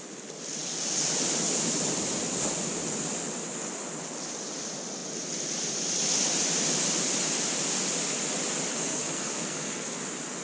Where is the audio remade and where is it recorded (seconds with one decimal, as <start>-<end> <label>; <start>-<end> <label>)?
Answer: 0.0-8.7 recorded; 8.7-10.0 remade; 10.0-10.4 recorded